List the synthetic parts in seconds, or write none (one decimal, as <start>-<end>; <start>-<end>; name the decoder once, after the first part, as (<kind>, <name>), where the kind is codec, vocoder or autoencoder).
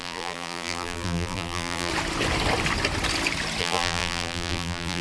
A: 0.0-1.9 (vocoder, BigVGAN v2); 3.6-5.0